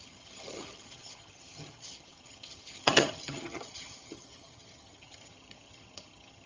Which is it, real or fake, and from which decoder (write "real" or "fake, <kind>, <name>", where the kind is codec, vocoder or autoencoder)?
fake, vocoder, HiFi-GAN